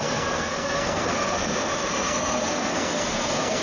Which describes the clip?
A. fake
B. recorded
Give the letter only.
A